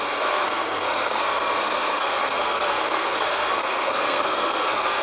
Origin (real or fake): fake